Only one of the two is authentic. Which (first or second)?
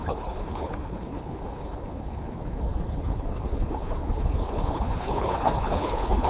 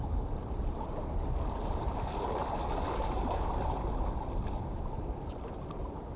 second